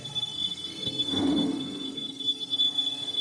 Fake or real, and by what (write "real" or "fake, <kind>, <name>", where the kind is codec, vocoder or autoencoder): fake, codec, SNAC